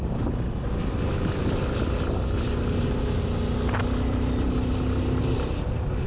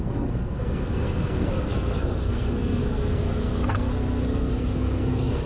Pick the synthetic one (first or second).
second